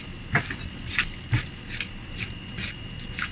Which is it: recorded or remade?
recorded